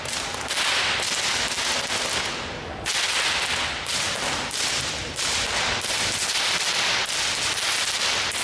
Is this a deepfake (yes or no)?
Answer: no